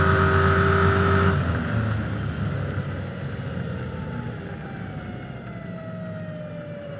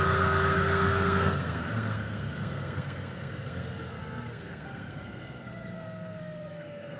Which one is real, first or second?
first